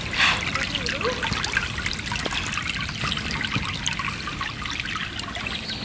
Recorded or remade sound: recorded